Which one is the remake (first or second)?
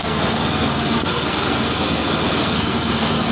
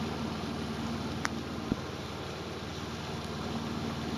first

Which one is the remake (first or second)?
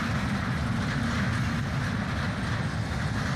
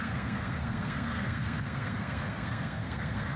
second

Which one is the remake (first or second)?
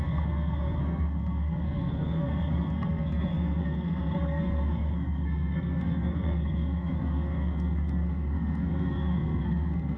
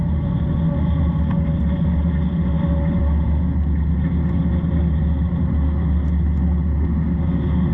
first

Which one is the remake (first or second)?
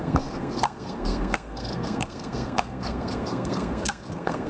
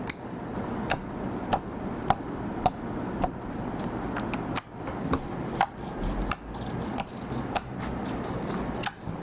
first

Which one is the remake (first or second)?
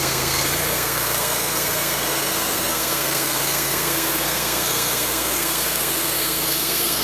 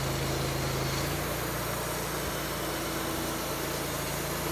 first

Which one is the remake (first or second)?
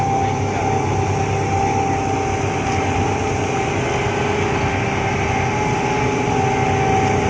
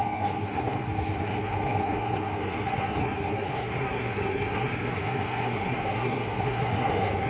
second